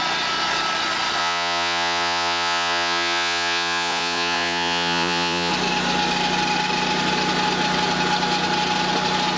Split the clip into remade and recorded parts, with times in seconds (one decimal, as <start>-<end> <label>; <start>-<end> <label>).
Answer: 0.0-1.2 recorded; 1.2-5.5 remade; 5.5-9.4 recorded

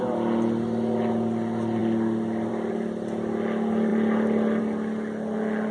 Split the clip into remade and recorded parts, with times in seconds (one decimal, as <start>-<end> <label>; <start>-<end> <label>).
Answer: 0.0-5.7 recorded

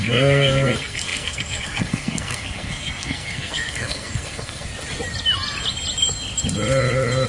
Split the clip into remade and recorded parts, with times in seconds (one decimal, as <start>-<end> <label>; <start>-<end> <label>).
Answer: 0.0-4.7 remade; 4.7-7.3 recorded